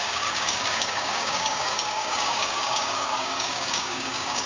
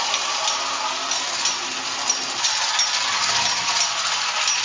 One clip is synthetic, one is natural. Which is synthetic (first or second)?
first